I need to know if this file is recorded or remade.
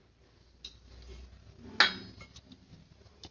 recorded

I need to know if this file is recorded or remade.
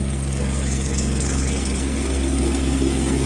remade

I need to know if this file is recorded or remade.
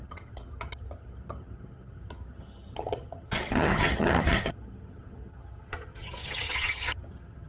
remade